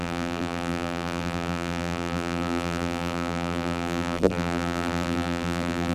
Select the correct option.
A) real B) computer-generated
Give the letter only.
B